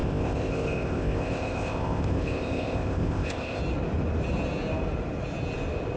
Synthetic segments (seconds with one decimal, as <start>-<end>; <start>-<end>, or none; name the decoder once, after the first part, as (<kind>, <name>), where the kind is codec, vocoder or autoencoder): 0.0-3.6 (codec, ZipCodec)